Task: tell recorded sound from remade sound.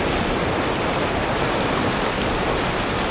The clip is recorded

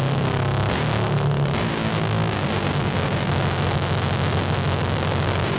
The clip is recorded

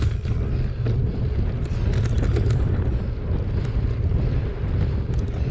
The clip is recorded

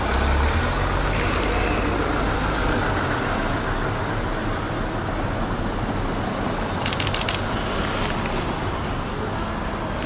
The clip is recorded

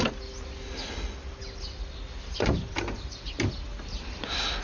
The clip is recorded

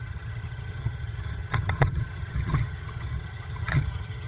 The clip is remade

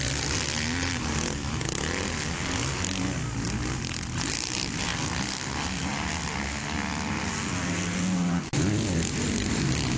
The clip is recorded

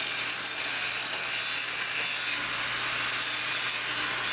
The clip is recorded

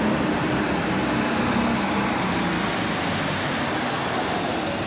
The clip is recorded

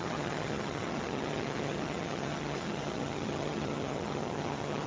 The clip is remade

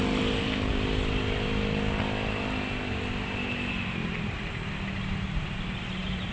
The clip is recorded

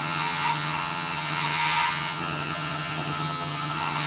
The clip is remade